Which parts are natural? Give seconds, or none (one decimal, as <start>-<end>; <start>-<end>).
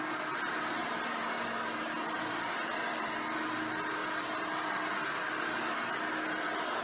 0.0-6.8